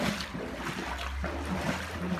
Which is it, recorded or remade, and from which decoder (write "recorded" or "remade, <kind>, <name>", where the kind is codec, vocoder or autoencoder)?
recorded